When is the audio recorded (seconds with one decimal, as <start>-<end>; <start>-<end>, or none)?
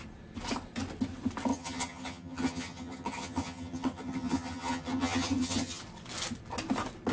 0.0-1.5; 5.8-7.1